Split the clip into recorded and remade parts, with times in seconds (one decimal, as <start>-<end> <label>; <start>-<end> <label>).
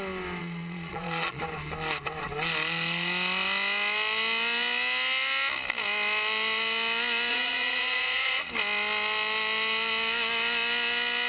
0.0-0.4 recorded; 0.4-1.4 remade; 1.4-7.3 recorded; 7.3-8.5 remade; 8.5-11.3 recorded